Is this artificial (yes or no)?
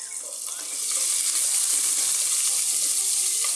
no